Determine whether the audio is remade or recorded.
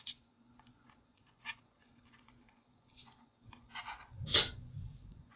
remade